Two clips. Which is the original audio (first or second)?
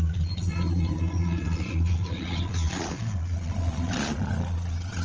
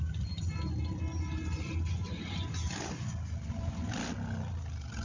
second